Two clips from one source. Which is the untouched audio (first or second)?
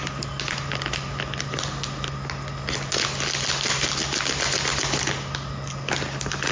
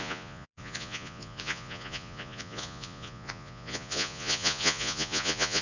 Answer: first